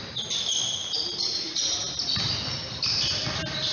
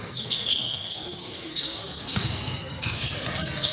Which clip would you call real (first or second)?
first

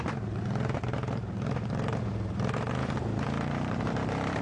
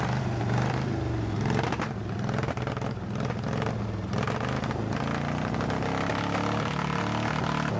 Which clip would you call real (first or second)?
second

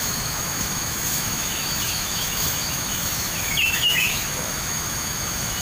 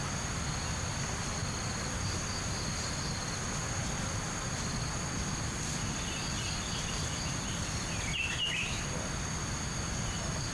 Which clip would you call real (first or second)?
second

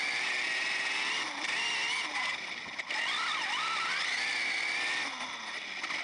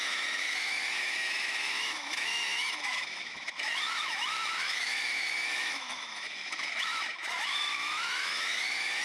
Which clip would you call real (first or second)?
first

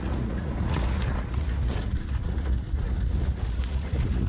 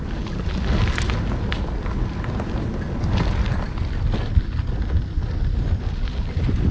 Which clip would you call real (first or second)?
second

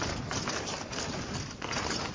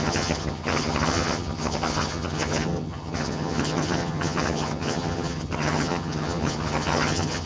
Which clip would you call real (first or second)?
first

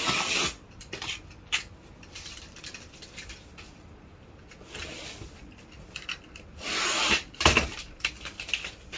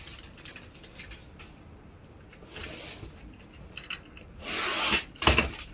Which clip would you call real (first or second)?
second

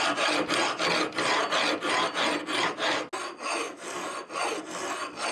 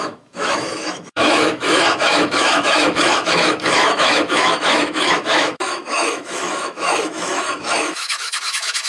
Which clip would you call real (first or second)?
first